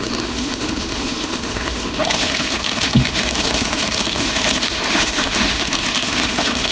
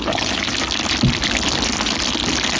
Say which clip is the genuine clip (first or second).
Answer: second